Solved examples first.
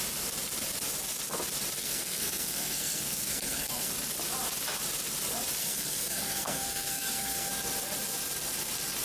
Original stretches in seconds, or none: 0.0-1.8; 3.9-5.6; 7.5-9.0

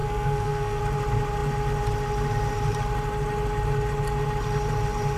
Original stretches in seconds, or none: 0.8-5.2

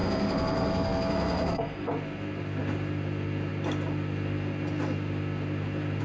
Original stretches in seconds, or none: 1.9-6.0